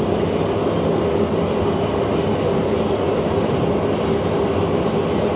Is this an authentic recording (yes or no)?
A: yes